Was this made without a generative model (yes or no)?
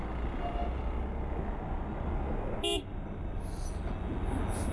yes